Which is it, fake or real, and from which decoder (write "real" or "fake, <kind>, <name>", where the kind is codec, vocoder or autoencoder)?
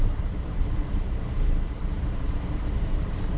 fake, vocoder, BigVGAN v2